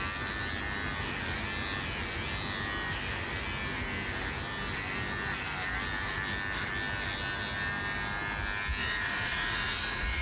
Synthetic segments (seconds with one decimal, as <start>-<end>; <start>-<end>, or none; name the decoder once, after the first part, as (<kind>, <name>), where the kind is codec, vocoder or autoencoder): 8.8-10.2 (vocoder, Vocos)